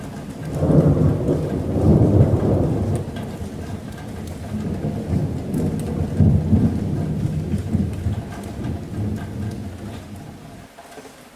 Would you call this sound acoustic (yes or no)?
yes